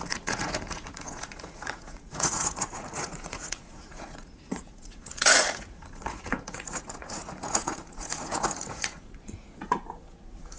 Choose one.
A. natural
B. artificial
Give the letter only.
B